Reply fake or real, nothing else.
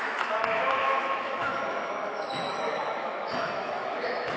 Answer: fake